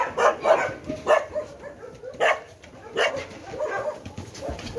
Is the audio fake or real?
real